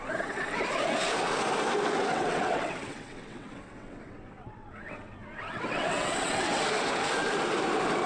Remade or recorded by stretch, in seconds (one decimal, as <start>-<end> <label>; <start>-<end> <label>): 0.0-2.1 recorded; 2.1-6.6 remade; 6.6-8.1 recorded